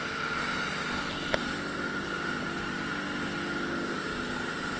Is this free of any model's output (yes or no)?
yes